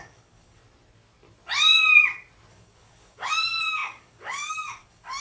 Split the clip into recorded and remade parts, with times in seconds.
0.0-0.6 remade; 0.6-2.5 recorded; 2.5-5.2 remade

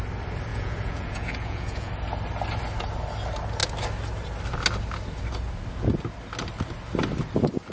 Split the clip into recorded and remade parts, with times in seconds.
0.0-0.5 recorded; 0.5-1.9 remade; 1.9-7.7 recorded

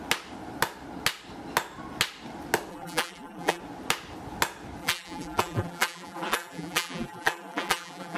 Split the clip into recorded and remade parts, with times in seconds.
0.0-2.7 recorded; 2.7-3.6 remade; 3.6-4.8 recorded; 4.8-8.2 remade

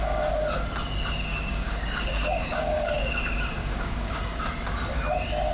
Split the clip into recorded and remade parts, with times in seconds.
0.0-1.3 recorded; 1.3-3.1 remade; 3.1-3.6 recorded; 3.6-4.4 remade; 4.4-5.5 recorded

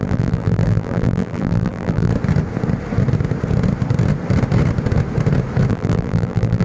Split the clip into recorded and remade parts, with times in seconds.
0.0-2.1 remade; 2.1-5.7 recorded; 5.7-6.6 remade

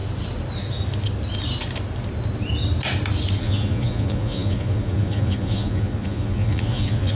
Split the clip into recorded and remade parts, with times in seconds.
0.0-3.4 recorded; 3.4-7.2 remade